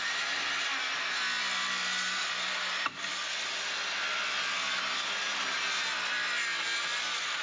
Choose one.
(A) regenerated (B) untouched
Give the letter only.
B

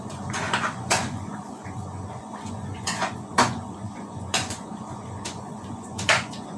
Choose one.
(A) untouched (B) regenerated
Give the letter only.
B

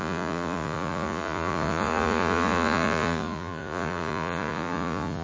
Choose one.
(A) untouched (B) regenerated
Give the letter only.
B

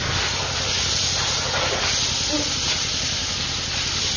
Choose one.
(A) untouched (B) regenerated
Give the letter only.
A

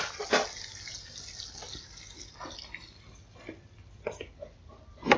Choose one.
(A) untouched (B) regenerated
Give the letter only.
A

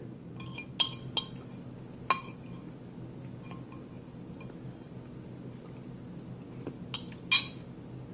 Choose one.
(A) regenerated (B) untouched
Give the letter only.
B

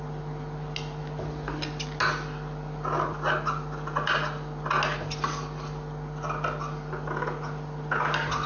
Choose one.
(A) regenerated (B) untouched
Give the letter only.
B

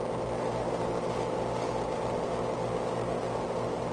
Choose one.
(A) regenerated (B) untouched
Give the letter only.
B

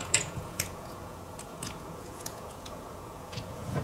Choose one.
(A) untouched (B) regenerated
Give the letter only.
B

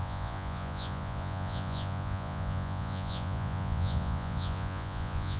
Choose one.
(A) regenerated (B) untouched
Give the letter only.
A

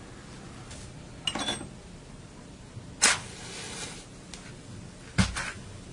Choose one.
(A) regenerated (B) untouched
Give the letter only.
B